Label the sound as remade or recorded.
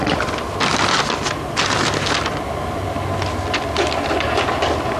recorded